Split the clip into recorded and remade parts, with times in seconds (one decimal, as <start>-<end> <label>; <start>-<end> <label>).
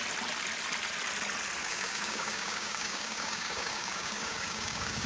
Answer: 0.0-1.6 recorded; 1.6-5.1 remade